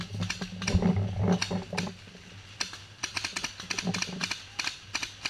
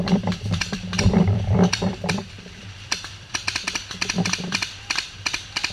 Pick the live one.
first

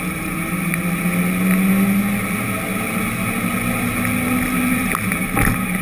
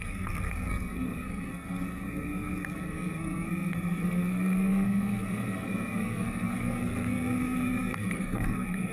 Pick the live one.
first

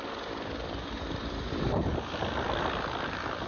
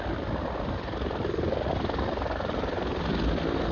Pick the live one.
first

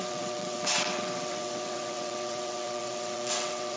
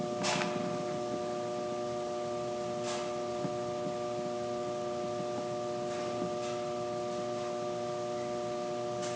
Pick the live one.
second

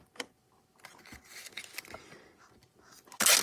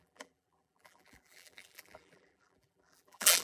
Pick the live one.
first